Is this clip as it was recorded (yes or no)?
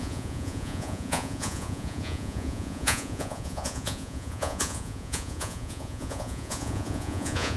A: no